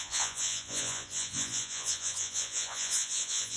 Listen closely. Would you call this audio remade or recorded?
remade